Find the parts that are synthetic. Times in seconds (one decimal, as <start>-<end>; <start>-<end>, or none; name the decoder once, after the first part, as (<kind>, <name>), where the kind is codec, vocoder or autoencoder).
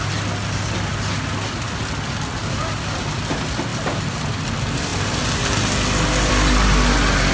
none